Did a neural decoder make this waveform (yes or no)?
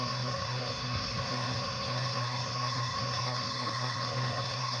yes